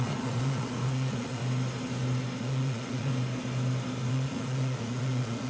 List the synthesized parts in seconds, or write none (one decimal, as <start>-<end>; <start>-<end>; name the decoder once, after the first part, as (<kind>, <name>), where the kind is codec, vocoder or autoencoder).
0.0-1.4 (vocoder, Vocos); 2.4-3.1; 4.1-5.5